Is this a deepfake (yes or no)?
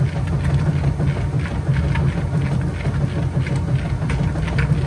no